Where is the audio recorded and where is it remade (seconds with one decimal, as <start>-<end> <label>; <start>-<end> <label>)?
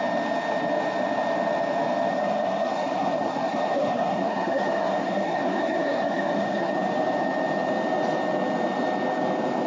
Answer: 0.0-2.1 recorded; 2.1-6.7 remade; 6.7-9.7 recorded